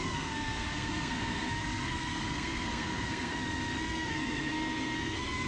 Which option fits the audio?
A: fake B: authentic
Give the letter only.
A